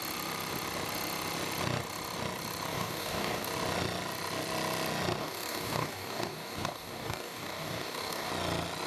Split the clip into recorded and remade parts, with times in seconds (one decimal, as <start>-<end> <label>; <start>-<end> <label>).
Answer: 0.0-2.7 recorded; 2.7-3.5 remade; 3.5-5.2 recorded; 5.2-8.3 remade; 8.3-8.9 recorded